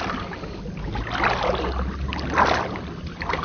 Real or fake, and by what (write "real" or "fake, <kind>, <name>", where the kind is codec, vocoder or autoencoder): real